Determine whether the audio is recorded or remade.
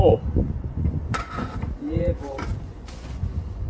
remade